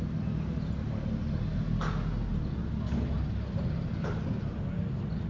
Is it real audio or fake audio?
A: real